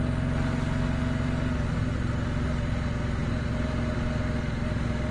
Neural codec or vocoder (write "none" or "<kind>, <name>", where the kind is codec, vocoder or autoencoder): none